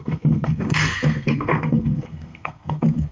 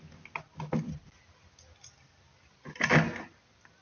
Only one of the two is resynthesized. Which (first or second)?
first